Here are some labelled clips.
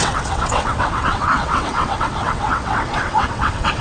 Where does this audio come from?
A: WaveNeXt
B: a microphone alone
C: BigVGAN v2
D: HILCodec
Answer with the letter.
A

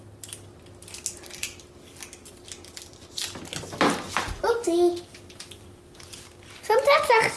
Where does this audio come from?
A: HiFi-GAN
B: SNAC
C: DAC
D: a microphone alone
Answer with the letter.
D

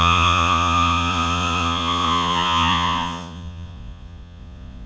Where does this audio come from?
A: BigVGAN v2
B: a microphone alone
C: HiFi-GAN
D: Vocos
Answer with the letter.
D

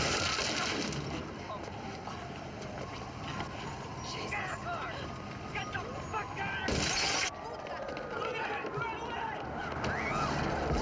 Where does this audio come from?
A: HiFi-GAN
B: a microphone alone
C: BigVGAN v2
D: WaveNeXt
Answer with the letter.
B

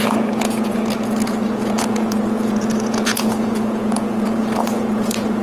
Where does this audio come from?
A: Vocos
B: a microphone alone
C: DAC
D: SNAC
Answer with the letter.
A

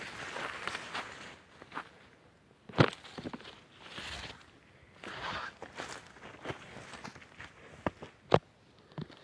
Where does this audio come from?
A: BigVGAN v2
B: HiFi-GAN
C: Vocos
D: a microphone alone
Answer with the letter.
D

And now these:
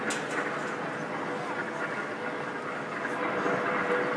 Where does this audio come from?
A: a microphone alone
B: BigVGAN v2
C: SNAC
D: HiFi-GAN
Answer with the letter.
A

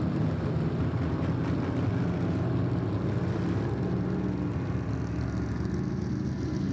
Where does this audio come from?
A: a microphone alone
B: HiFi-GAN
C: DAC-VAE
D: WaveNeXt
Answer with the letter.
A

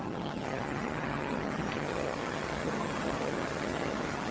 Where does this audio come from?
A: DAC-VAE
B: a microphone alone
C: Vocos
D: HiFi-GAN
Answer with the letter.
D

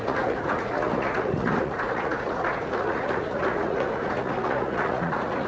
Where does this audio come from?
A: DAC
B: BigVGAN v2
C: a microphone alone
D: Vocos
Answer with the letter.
D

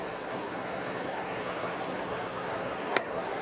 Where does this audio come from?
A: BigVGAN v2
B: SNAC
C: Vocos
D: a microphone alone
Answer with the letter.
B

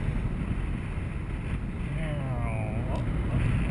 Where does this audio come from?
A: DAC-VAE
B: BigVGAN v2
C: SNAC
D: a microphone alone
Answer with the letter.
D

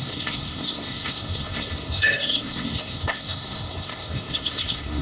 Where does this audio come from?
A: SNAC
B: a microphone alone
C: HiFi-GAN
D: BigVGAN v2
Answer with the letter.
A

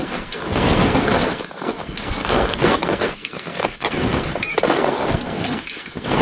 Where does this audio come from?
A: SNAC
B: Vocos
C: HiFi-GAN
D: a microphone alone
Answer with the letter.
A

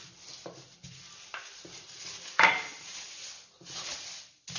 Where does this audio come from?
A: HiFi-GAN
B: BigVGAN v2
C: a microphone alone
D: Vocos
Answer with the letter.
C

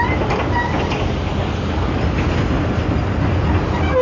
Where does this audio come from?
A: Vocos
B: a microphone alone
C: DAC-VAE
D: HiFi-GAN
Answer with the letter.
B